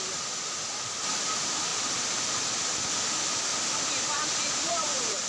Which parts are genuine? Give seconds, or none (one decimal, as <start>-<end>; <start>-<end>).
0.0-1.7; 2.5-3.5